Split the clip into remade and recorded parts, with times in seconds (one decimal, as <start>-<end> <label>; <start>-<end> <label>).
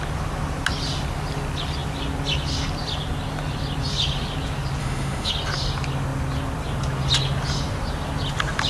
0.0-4.8 recorded; 4.8-5.3 remade; 5.3-8.7 recorded